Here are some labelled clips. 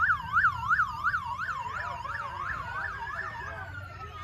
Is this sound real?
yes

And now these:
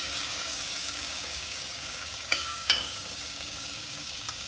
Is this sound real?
no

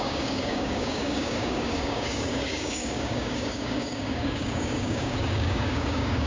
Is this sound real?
no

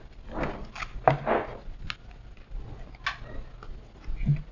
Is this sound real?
yes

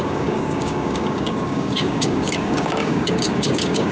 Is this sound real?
no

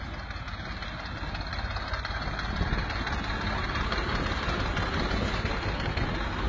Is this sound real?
yes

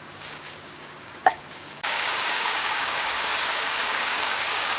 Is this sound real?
no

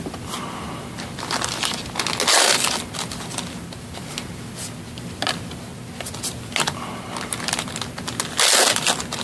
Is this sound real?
yes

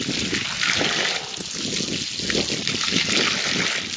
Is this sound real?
yes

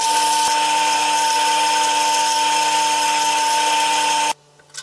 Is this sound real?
yes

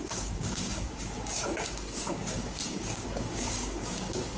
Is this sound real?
no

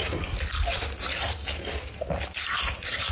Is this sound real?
yes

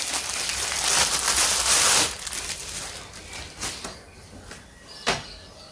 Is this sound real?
yes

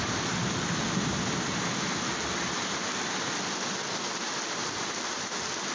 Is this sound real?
yes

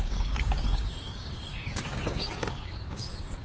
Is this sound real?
no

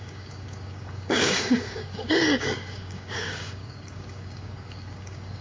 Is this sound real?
no